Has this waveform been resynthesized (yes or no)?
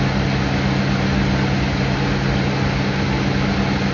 no